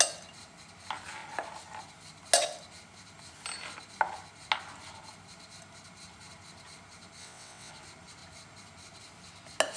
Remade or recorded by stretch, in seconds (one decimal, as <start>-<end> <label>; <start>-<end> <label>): 0.0-7.2 recorded; 7.2-7.7 remade; 7.7-9.8 recorded